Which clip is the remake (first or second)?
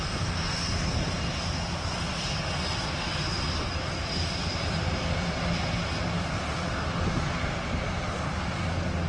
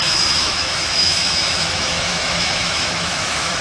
second